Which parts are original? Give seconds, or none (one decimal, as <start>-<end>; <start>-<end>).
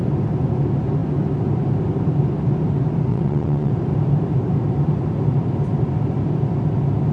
0.0-3.1; 3.7-7.1